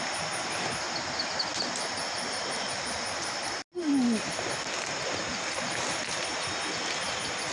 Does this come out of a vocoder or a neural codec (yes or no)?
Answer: no